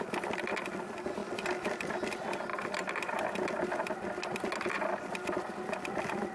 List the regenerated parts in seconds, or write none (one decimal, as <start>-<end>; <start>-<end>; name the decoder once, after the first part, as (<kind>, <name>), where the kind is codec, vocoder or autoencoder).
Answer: none

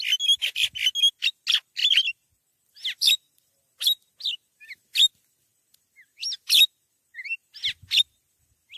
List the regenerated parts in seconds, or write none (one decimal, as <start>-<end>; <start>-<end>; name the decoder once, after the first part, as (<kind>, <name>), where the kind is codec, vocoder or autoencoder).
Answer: none